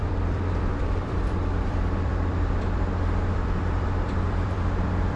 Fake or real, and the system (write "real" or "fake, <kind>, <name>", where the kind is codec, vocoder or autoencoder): fake, vocoder, BigVGAN v2